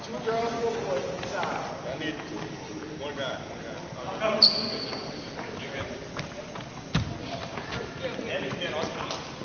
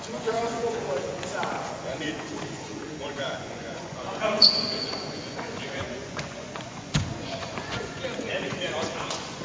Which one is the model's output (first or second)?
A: second